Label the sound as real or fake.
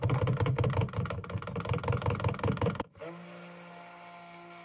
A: real